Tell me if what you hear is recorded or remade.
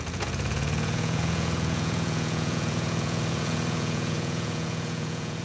remade